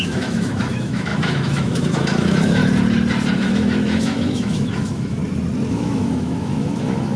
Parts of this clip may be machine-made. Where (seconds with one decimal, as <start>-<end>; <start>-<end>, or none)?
0.0-2.6; 3.3-5.2; 5.7-7.2